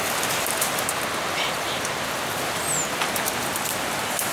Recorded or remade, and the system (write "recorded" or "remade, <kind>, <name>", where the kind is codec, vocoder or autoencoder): recorded